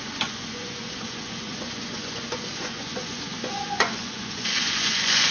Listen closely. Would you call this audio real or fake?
fake